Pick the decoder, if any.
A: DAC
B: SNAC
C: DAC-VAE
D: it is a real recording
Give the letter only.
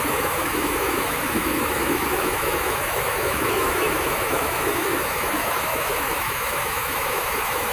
C